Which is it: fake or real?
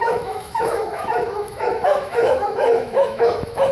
fake